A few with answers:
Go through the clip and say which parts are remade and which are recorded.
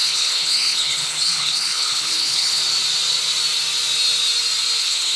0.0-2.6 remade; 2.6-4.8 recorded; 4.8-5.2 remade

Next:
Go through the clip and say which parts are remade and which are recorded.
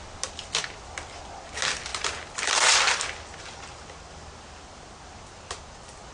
0.0-6.1 recorded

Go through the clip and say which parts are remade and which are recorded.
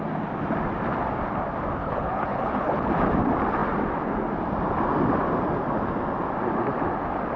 0.0-1.8 recorded; 1.8-2.9 remade; 2.9-7.4 recorded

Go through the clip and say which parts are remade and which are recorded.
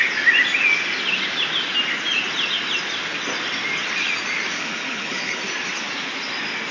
0.0-4.5 recorded; 4.5-5.4 remade; 5.4-6.7 recorded